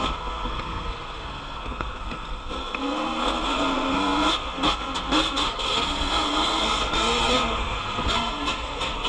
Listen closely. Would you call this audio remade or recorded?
remade